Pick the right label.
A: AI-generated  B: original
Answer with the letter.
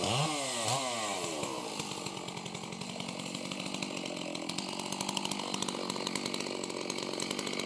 B